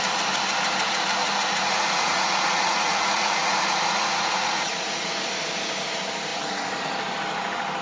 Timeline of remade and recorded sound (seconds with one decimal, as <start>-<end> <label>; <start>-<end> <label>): 0.0-1.2 recorded; 1.2-5.1 remade; 5.1-7.8 recorded